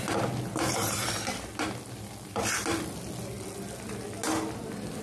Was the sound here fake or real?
real